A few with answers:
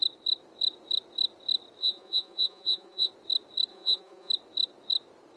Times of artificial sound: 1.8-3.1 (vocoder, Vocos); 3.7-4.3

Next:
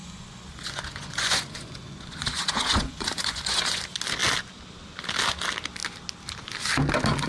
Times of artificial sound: 0.0-3.8 (vocoder, Vocos)

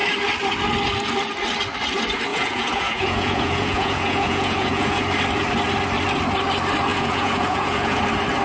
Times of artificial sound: 2.3-5.0 (vocoder, Vocos); 6.9-8.0